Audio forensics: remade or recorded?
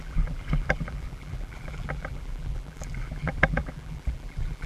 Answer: remade